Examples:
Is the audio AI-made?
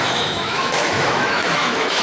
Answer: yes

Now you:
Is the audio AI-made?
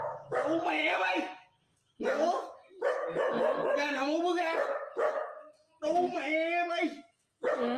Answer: yes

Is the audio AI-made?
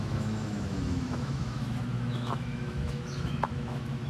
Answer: yes